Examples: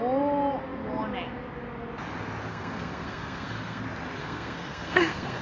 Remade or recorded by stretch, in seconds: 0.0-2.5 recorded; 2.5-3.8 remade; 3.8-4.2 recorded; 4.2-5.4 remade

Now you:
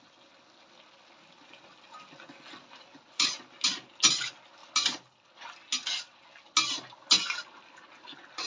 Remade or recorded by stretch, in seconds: 0.0-8.5 recorded

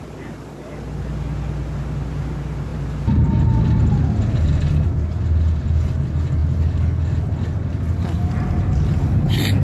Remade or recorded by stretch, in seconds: 0.0-9.6 recorded